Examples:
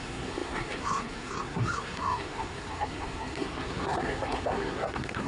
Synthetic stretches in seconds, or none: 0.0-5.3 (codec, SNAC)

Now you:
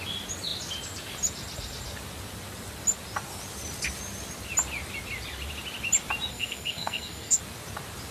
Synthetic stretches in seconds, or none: 6.3-7.4 (codec, SNAC)

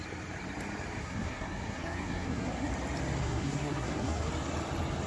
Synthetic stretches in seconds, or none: 1.0-2.7 (codec, SNAC); 3.2-4.3

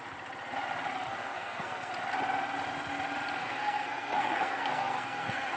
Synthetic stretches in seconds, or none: 1.1-1.9 (codec, SNAC); 3.4-5.6

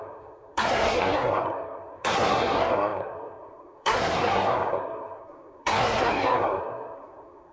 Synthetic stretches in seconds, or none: 0.0-7.5 (codec, SNAC)

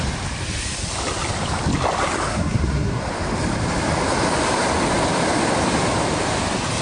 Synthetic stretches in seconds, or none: 2.3-3.0 (codec, SNAC)

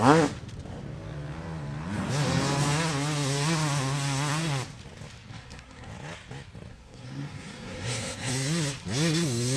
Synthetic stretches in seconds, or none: 5.3-5.9 (codec, SNAC); 6.7-8.3

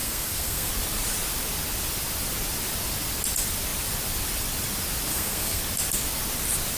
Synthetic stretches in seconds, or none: 0.0-0.7 (codec, SNAC); 5.1-5.6